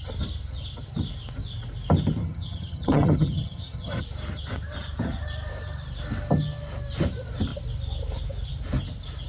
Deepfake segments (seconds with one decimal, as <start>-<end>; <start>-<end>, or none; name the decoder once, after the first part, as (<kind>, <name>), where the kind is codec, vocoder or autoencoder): 2.2-4.0 (vocoder, HiFi-GAN)